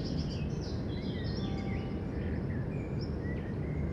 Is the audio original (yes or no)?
yes